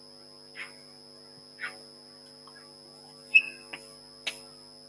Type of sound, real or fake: real